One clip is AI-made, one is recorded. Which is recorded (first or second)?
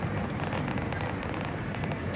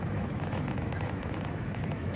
first